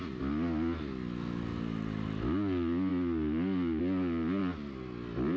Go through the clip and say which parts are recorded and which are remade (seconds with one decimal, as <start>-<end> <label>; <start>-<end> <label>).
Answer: 0.0-5.4 recorded